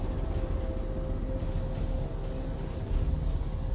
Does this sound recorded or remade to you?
recorded